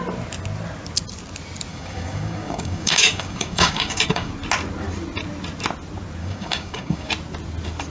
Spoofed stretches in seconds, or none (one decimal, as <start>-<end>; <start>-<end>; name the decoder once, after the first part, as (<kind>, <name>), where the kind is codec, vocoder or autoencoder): 1.7-4.3 (codec, DAC); 6.2-7.1